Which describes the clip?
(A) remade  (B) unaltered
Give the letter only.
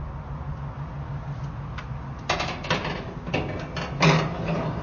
B